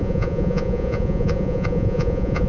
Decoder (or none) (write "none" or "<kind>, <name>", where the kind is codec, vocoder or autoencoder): vocoder, Vocos